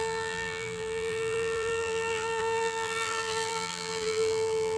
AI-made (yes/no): yes